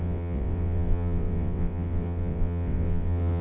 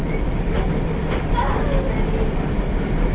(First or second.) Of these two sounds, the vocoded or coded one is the first